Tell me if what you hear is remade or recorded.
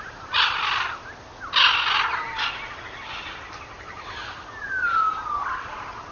recorded